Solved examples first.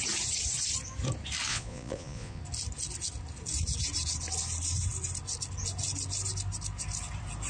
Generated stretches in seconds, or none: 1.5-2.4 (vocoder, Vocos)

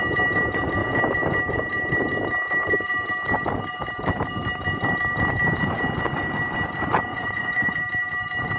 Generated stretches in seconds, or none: 7.1-7.8 (vocoder, Vocos)

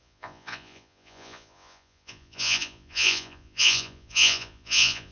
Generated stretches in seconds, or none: 0.0-5.1 (vocoder, Vocos)